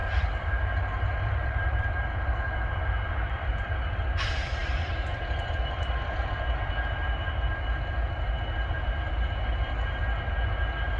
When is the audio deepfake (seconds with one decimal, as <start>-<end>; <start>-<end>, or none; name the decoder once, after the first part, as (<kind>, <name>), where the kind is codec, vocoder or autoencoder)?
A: 0.0-1.9 (vocoder, BigVGAN v2); 4.6-6.4